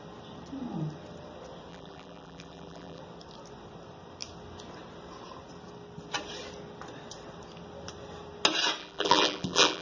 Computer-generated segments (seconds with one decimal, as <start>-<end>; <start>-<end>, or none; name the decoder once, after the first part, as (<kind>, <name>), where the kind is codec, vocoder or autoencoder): 1.7-3.0 (vocoder, BigVGAN v2); 8.8-9.8